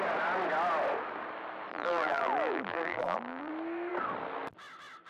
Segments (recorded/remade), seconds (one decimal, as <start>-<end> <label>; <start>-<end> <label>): 0.0-1.7 recorded; 1.7-3.5 remade; 3.5-5.1 recorded